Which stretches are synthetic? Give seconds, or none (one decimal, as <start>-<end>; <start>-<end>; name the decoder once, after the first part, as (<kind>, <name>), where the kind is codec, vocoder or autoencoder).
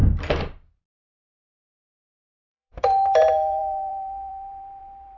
2.0-5.2 (vocoder, BigVGAN v2)